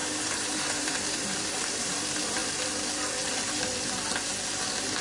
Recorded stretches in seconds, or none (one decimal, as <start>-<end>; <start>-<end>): 2.0-5.0